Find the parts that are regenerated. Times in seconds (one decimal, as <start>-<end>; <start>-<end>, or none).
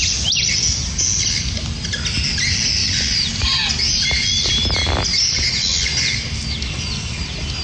2.8-3.4